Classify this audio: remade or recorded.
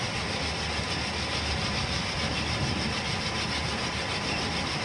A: recorded